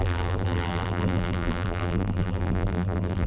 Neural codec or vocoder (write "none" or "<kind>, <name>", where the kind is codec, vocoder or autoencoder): vocoder, BigVGAN v2